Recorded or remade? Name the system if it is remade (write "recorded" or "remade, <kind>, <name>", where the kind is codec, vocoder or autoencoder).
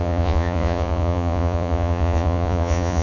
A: remade, vocoder, Vocos